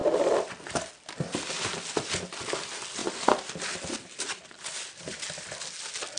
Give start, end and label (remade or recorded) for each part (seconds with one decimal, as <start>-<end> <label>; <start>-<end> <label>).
0.0-3.0 recorded; 3.0-5.6 remade; 5.6-6.2 recorded